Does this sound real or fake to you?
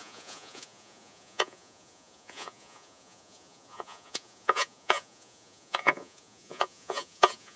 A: fake